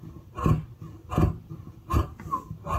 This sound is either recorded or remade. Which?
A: recorded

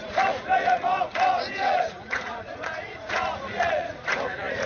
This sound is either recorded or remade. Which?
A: remade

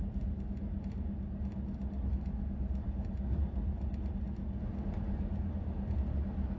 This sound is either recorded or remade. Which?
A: recorded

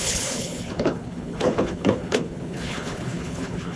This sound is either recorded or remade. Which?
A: remade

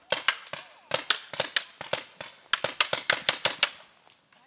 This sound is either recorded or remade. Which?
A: recorded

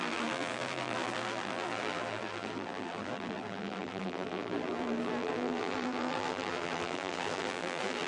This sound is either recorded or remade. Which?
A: remade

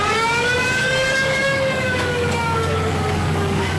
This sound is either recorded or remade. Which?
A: remade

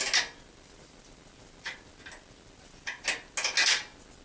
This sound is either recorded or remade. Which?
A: recorded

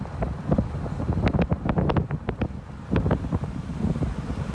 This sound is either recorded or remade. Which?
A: recorded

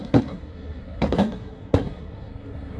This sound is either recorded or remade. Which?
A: remade